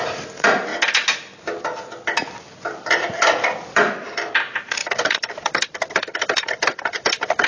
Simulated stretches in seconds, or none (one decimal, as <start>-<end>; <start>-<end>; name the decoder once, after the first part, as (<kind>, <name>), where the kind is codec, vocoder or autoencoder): 0.0-0.7 (vocoder, BigVGAN v2); 2.3-7.5